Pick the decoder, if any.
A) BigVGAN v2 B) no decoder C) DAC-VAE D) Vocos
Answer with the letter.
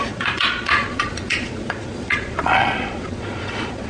D